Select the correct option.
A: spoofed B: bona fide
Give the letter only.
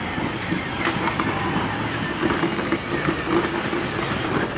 B